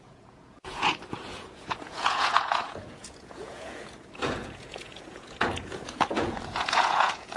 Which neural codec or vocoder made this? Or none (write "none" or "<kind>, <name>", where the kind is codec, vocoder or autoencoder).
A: vocoder, Vocos